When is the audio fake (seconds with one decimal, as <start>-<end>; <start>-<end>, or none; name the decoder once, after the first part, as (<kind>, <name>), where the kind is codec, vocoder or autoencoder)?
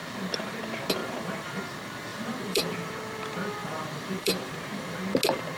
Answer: 1.0-1.6 (vocoder, BigVGAN v2); 2.1-2.9; 3.6-5.0